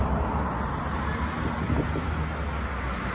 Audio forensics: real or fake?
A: real